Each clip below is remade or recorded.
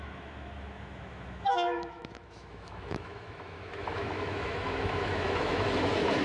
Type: remade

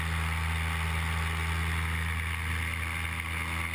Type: recorded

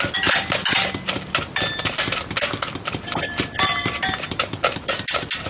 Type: recorded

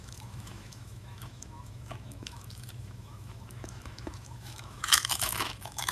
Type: remade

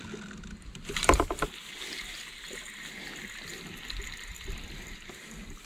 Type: recorded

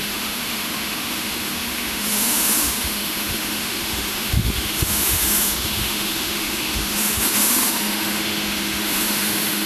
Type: remade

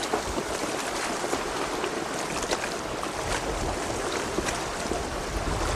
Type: recorded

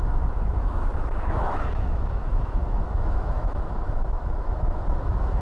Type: remade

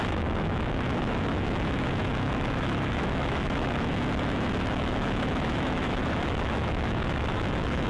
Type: remade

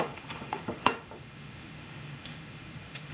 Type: remade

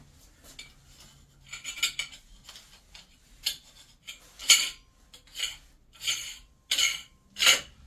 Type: recorded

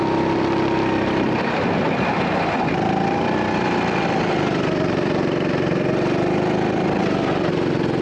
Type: recorded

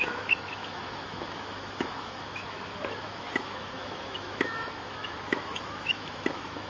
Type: remade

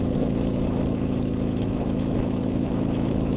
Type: remade